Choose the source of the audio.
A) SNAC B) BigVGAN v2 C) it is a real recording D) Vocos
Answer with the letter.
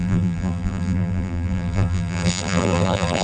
B